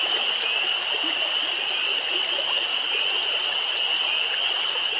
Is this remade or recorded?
recorded